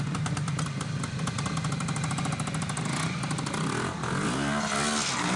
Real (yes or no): yes